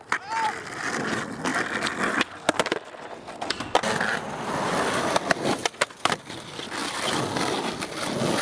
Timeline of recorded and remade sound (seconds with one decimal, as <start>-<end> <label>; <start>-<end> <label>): 0.0-8.4 recorded